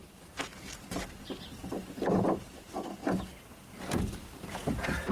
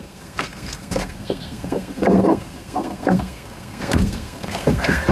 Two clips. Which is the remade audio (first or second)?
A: second